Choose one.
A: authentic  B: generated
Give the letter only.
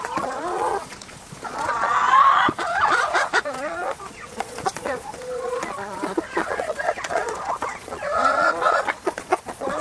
B